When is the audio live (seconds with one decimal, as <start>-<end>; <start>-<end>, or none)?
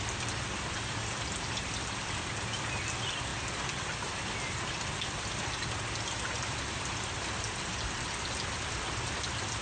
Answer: 0.0-9.6